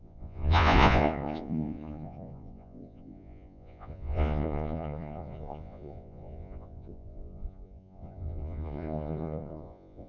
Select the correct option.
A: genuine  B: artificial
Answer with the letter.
B